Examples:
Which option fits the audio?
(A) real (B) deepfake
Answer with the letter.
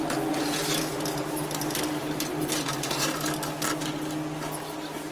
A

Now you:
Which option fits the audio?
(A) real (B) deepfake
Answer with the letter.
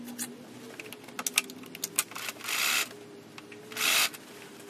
A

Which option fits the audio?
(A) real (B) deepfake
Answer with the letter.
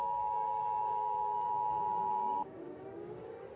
B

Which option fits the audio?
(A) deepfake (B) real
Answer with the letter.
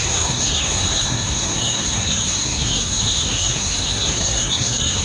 A